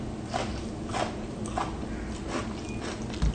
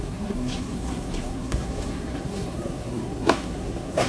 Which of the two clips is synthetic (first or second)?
second